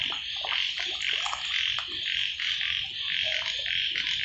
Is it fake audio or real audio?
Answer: real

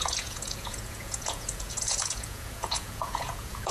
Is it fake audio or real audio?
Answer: fake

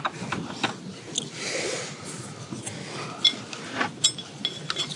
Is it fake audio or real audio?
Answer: real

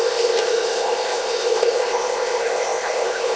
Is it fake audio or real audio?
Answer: fake